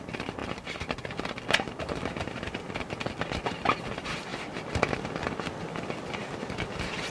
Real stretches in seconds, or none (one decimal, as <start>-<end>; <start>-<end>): 0.4-2.2